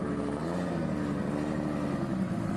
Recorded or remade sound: recorded